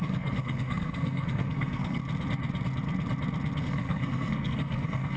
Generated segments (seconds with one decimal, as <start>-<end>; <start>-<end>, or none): 0.0-2.0; 3.6-5.2